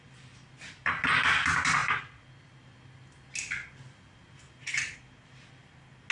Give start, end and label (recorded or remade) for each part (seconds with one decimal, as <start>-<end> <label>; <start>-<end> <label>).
0.0-6.1 recorded